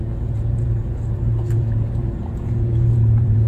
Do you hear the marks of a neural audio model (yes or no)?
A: yes